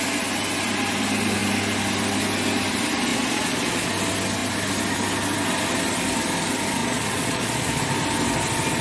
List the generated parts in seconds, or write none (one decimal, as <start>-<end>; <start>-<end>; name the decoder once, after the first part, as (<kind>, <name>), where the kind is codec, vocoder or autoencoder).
3.1-3.9 (vocoder, Vocos); 6.8-7.8